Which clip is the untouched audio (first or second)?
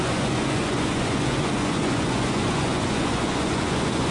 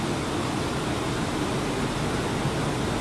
second